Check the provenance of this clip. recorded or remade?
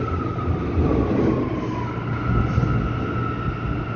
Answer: recorded